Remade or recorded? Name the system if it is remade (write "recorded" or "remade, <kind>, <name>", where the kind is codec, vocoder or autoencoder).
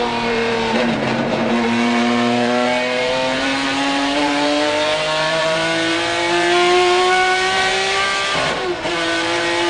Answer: remade, vocoder, BigVGAN v2